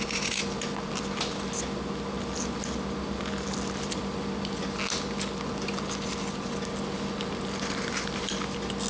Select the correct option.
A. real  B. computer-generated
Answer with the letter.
A